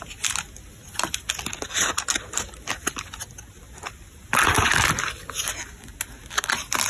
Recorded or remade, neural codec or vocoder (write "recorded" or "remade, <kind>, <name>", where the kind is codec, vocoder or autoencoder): recorded